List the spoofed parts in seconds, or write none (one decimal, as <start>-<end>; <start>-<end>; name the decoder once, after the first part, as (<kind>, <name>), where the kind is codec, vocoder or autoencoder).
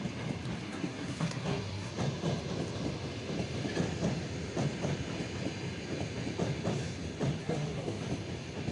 0.6-1.9 (codec, SNAC); 7.4-8.0